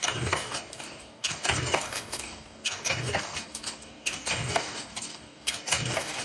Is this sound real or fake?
fake